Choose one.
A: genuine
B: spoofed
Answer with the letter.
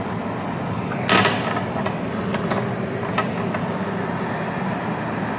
A